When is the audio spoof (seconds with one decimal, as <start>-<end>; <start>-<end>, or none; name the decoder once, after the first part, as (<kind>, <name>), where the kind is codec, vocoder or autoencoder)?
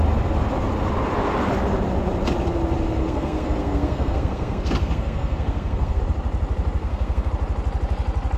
3.0-6.0 (codec, SNAC); 6.8-7.3